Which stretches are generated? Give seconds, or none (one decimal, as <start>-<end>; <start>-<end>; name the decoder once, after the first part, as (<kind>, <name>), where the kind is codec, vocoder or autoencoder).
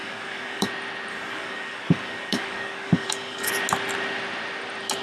0.0-0.7 (codec, DAC); 1.1-3.5